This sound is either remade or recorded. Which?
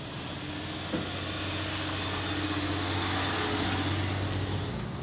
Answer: recorded